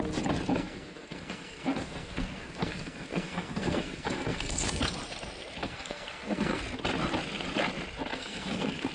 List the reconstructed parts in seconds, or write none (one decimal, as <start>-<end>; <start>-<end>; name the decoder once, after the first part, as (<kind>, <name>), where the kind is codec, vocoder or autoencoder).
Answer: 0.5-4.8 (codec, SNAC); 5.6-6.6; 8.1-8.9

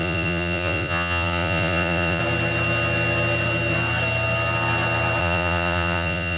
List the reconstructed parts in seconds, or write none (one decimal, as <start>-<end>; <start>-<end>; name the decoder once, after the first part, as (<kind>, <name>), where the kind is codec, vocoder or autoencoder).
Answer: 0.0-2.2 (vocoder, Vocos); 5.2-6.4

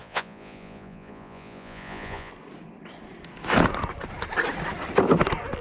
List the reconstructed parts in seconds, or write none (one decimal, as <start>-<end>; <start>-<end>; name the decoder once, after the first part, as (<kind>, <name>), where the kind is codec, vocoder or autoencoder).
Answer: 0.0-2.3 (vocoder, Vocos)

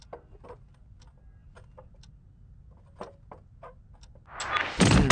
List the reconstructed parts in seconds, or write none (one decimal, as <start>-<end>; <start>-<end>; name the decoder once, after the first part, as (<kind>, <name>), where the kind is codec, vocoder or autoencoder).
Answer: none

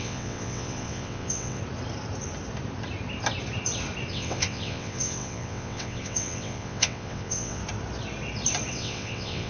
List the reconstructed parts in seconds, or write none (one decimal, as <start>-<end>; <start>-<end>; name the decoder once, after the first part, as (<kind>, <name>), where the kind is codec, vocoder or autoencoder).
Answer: 0.0-1.6 (vocoder, WaveNeXt); 4.1-7.6; 8.7-9.5

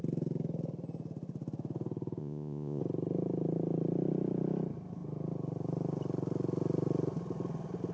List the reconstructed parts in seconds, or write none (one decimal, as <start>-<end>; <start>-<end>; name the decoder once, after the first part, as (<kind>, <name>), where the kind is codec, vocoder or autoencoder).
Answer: 2.2-2.8 (vocoder, Vocos)